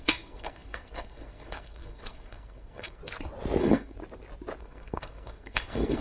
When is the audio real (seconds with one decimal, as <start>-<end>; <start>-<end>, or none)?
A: 3.0-3.6; 4.0-4.6